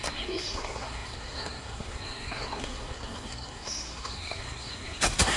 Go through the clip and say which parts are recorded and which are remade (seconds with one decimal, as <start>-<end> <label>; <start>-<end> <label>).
0.0-5.4 remade